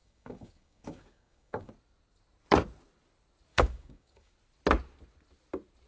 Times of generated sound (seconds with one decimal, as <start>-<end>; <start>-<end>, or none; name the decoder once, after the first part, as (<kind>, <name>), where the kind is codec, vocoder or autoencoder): 0.0-1.7 (codec, DAC); 3.5-4.3